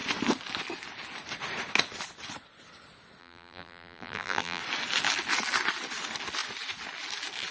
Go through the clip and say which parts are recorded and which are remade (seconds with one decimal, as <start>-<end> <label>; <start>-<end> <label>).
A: 0.0-3.2 recorded; 3.2-4.6 remade; 4.6-7.5 recorded